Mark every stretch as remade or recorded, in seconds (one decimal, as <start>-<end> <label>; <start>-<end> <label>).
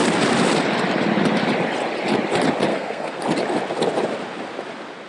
0.0-2.7 recorded; 2.7-3.2 remade; 3.2-5.1 recorded